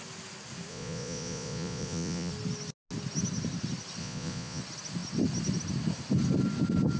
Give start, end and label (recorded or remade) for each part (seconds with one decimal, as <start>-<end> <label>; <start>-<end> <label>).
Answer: 0.0-0.7 recorded; 0.7-2.3 remade; 2.3-4.0 recorded; 4.0-4.6 remade; 4.6-7.0 recorded